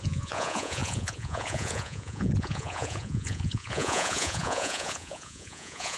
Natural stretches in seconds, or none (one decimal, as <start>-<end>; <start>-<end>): none